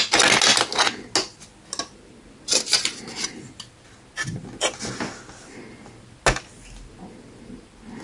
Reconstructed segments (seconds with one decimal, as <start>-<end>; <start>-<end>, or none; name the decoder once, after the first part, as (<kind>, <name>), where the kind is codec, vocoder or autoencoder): none